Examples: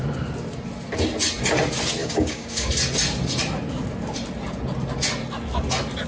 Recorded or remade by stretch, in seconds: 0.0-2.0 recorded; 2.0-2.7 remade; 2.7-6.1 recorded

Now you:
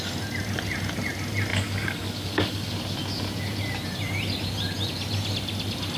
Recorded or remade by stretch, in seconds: 0.0-1.5 recorded; 1.5-2.7 remade; 2.7-6.0 recorded